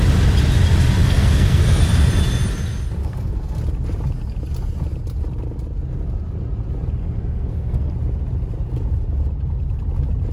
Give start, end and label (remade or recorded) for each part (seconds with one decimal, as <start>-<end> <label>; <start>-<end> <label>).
0.0-1.0 recorded; 1.0-1.8 remade; 1.8-3.0 recorded; 3.0-3.6 remade; 3.6-7.0 recorded; 7.0-7.9 remade; 7.9-10.3 recorded